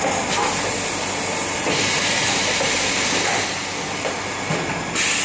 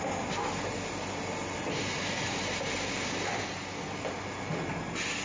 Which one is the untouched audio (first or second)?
second